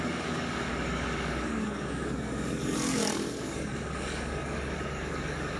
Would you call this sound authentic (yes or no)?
no